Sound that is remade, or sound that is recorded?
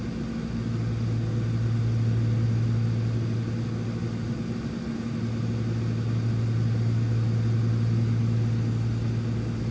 recorded